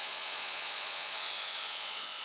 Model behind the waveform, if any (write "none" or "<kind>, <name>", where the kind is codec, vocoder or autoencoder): vocoder, Vocos